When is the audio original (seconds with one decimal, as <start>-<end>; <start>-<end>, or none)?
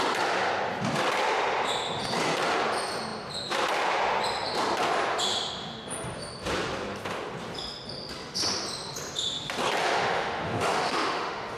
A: 0.0-9.8